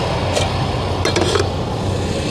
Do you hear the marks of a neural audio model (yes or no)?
no